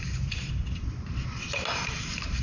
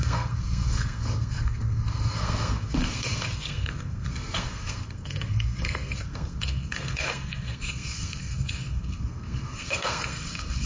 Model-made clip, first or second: second